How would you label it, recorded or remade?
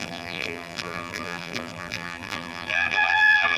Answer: remade